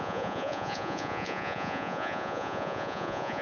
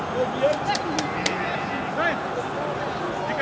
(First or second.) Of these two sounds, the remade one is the first